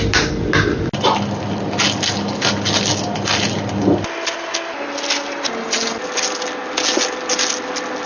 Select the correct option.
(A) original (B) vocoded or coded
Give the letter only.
A